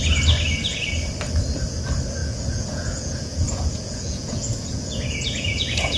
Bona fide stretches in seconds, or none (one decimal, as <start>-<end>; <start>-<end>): 0.0-2.2